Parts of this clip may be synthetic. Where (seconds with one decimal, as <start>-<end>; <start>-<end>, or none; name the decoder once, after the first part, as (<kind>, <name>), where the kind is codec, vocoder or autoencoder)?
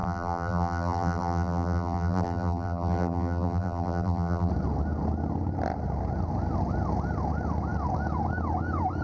0.0-4.5 (vocoder, BigVGAN v2)